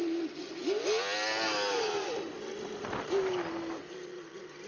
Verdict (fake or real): real